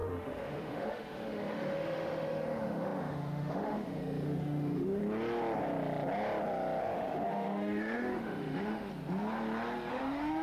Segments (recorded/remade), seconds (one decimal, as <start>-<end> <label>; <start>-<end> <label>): 0.0-5.0 remade; 5.0-6.8 recorded; 6.8-8.9 remade; 8.9-9.9 recorded; 9.9-10.4 remade